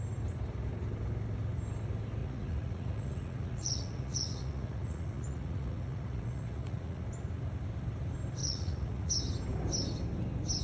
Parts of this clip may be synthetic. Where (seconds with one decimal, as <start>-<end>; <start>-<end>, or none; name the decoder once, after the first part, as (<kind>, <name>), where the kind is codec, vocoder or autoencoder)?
2.2-7.0 (vocoder, Vocos); 8.4-9.1